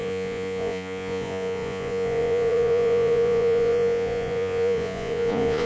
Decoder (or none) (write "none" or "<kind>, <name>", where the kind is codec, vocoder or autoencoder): vocoder, Vocos